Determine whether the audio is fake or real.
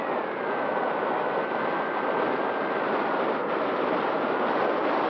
real